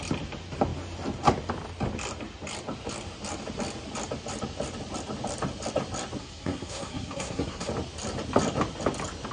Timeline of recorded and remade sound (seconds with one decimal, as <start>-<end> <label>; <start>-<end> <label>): 0.0-6.2 recorded; 6.2-7.7 remade; 7.7-9.3 recorded